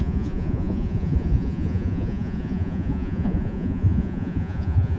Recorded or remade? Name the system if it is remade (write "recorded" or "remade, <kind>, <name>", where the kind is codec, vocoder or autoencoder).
remade, vocoder, Vocos